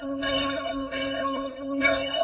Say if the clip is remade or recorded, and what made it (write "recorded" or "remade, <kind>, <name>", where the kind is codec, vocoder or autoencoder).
remade, codec, SNAC